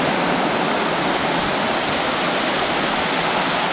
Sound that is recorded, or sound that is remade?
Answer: recorded